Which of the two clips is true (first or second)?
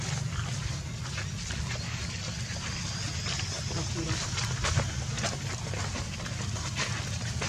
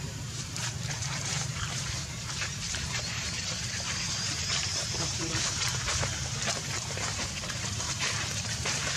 first